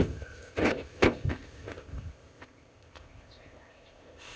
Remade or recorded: remade